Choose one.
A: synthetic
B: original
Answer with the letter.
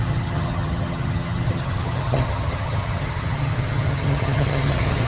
A